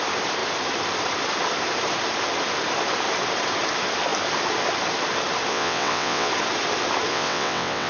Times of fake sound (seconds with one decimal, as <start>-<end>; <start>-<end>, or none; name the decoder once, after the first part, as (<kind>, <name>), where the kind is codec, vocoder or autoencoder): 5.5-6.3 (vocoder, WaveNeXt); 7.1-7.9